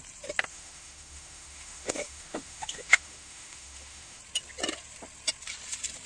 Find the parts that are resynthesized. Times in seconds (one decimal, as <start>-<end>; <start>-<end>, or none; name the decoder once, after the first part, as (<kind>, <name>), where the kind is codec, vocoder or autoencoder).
0.5-4.2 (autoencoder, DAC-VAE)